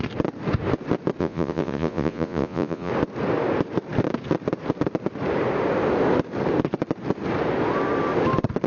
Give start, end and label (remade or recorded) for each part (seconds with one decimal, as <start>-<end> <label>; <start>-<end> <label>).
0.0-1.2 recorded; 1.2-2.9 remade; 2.9-8.7 recorded